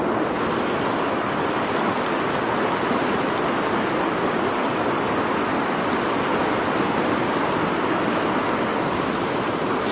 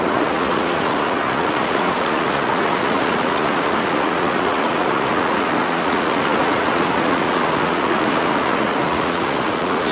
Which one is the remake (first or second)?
second